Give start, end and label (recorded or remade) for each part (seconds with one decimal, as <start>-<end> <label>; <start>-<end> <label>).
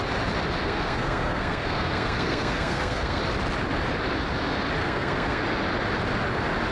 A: 0.0-0.6 recorded; 0.6-3.2 remade; 3.2-4.8 recorded; 4.8-5.4 remade; 5.4-6.7 recorded